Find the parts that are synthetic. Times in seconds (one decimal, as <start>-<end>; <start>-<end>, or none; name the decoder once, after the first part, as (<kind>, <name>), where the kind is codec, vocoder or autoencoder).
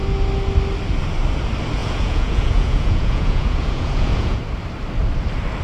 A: 1.8-4.4 (vocoder, Vocos)